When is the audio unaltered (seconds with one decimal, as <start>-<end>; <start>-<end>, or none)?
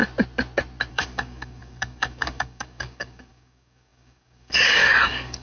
0.0-0.9